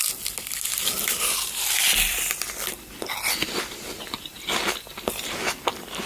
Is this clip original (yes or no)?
yes